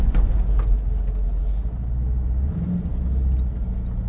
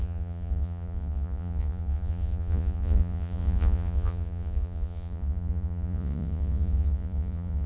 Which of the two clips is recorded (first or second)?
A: first